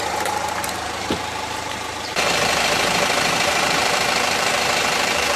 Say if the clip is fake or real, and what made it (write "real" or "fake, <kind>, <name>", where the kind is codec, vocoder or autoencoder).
fake, vocoder, BigVGAN v2